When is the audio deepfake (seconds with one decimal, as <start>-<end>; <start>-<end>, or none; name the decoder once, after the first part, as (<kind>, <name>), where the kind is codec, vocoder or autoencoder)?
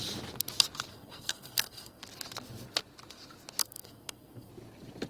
0.9-2.0 (codec, SNAC); 3.6-4.5